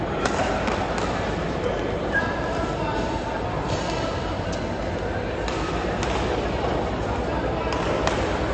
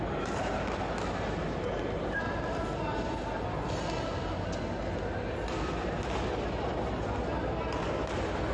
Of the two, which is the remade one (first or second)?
first